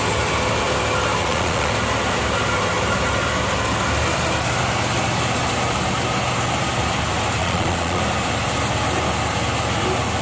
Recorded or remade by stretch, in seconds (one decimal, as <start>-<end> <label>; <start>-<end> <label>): 0.0-1.2 recorded; 1.2-1.7 remade; 1.7-7.4 recorded; 7.4-8.0 remade; 8.0-10.2 recorded